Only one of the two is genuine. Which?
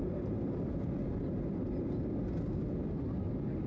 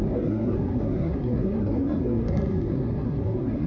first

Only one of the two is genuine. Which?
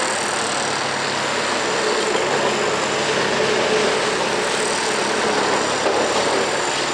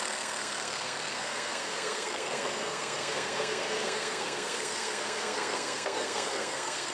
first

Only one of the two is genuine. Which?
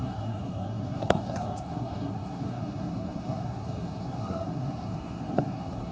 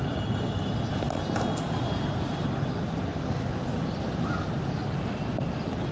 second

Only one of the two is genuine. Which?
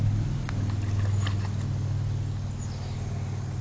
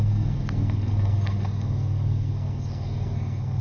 first